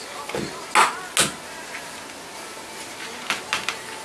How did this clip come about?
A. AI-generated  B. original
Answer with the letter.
B